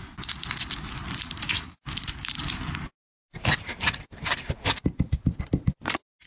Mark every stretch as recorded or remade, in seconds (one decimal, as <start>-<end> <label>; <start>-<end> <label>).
0.0-1.0 recorded; 1.0-4.8 remade; 4.8-6.3 recorded